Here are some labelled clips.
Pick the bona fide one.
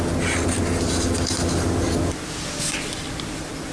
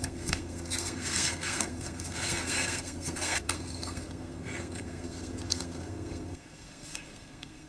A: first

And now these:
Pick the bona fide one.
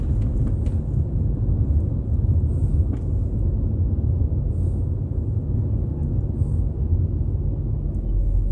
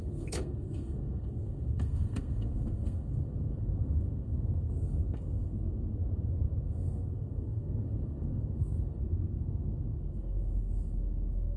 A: first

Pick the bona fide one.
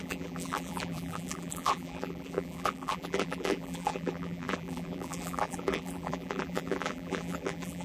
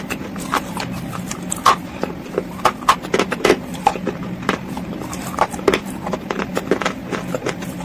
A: second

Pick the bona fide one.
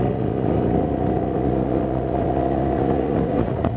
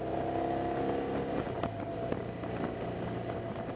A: second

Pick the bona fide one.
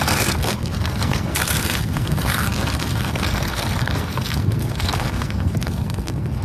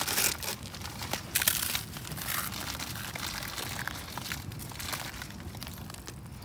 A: second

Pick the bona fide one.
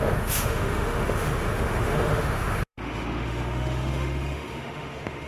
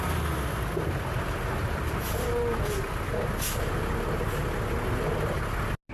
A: second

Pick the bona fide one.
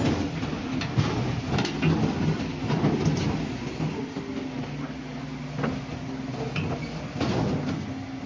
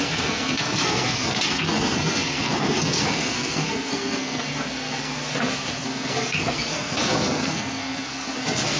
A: first